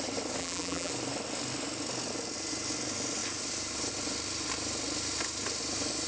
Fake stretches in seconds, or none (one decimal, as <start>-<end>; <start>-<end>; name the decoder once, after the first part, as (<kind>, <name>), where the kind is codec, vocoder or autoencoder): 0.4-0.9 (vocoder, BigVGAN v2)